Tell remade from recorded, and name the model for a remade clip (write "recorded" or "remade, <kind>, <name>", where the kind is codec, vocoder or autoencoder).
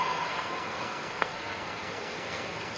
remade, codec, SNAC